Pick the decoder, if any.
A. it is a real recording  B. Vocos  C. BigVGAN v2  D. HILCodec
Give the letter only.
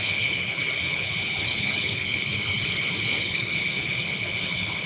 D